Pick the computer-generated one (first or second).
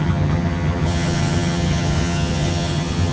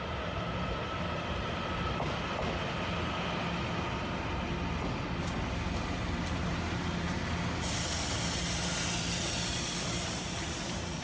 first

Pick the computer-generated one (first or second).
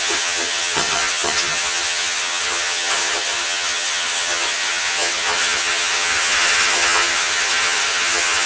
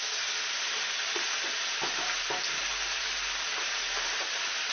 first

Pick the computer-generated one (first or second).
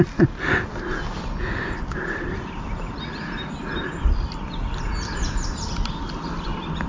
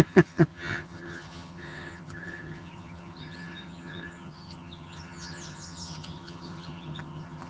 second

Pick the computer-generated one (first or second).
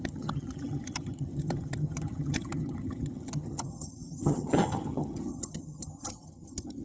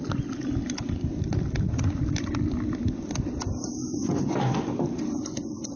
first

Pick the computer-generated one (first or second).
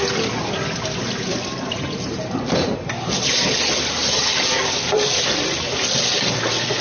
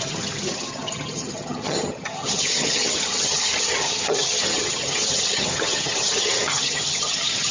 second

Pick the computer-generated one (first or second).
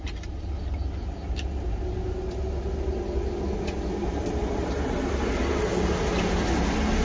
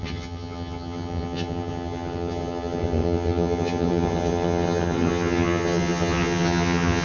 second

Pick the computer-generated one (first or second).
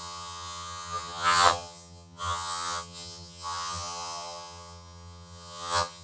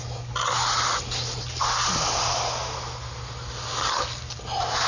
first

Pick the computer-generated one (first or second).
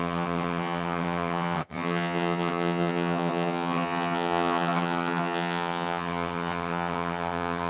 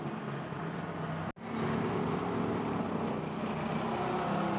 first